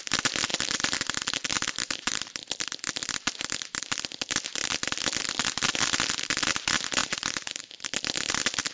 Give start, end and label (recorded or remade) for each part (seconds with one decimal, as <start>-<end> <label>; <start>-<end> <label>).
0.0-0.5 recorded; 0.5-2.3 remade; 2.3-7.0 recorded; 7.0-7.6 remade; 7.6-8.7 recorded